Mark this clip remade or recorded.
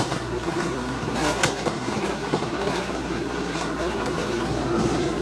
remade